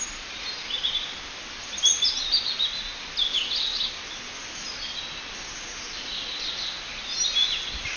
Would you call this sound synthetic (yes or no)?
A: no